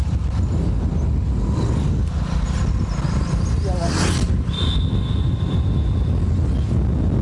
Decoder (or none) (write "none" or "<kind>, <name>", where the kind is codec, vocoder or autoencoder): none